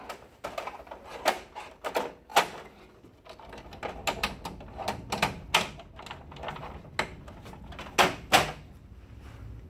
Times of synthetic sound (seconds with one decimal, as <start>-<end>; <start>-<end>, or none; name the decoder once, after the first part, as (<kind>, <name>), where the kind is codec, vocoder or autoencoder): none